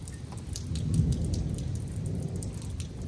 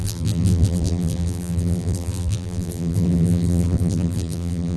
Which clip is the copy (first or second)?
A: second